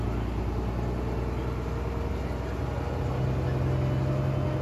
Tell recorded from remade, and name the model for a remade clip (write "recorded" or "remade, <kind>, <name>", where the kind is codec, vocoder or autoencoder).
recorded